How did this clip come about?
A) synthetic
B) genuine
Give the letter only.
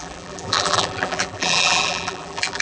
A